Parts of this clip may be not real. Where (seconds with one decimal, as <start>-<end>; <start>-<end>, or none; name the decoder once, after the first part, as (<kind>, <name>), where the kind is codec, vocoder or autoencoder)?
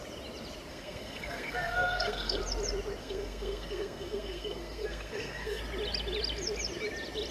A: 0.7-2.4 (codec, SNAC); 3.0-5.6